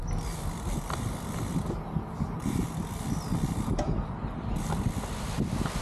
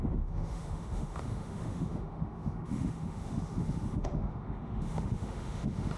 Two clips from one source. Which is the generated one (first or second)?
second